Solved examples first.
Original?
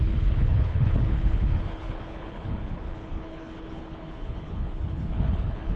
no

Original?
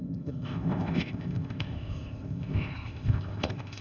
no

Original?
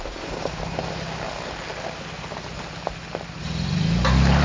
yes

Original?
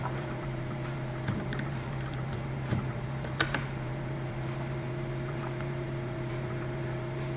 no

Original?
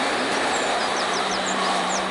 no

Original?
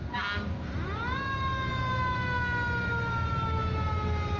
yes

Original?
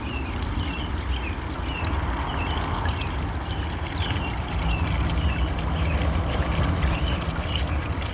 yes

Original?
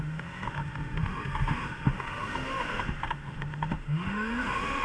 no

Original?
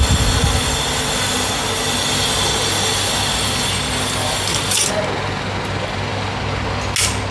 yes